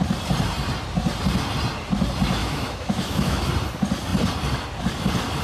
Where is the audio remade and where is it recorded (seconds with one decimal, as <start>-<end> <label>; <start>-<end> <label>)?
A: 0.0-2.4 recorded; 2.4-3.5 remade; 3.5-5.4 recorded